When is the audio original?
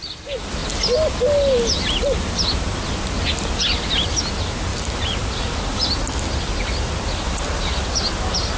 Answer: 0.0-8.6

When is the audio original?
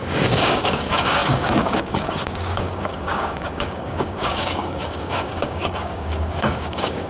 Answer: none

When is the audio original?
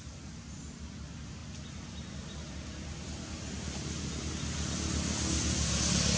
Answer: 0.0-6.2